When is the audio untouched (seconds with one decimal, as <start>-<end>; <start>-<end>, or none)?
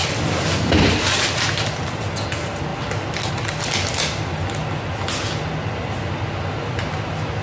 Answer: 0.0-7.4